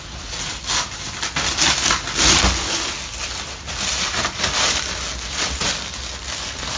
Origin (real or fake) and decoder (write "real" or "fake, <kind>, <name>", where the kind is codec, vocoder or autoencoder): real